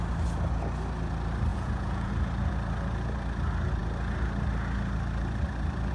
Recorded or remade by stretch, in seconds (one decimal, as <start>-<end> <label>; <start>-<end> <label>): 0.0-1.5 recorded; 1.5-2.1 remade; 2.1-5.9 recorded